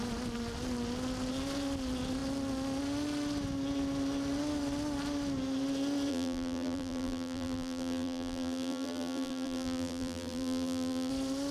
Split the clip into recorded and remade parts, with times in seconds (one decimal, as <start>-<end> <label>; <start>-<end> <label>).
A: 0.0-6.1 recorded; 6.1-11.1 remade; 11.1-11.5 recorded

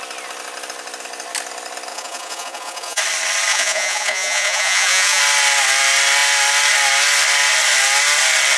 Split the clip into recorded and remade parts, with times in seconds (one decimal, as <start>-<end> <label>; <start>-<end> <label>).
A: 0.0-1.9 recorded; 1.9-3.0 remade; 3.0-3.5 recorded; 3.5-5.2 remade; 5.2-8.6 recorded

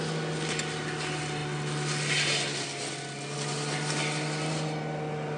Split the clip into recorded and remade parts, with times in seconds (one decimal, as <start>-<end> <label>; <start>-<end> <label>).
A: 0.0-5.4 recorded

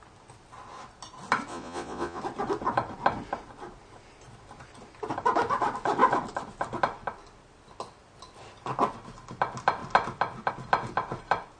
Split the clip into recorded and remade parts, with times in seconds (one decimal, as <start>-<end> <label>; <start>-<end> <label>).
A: 0.0-1.5 recorded; 1.5-2.2 remade; 2.2-11.6 recorded

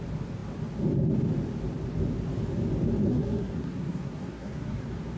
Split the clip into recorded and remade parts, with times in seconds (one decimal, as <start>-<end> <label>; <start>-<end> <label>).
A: 0.0-3.1 recorded; 3.1-4.8 remade; 4.8-5.2 recorded

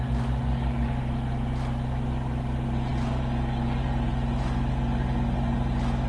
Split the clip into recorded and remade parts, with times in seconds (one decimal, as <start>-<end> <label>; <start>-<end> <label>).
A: 0.0-6.1 recorded